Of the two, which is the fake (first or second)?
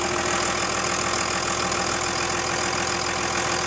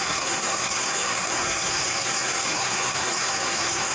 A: second